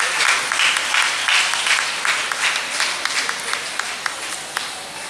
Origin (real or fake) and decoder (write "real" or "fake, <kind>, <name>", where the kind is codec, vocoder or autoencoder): real